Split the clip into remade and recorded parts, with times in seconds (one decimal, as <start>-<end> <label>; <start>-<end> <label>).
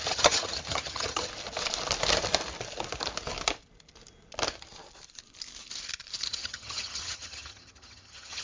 0.0-1.3 remade; 1.3-6.3 recorded; 6.3-8.4 remade